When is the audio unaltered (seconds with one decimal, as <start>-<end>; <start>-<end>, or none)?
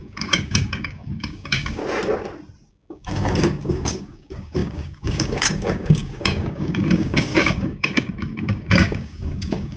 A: 1.8-2.7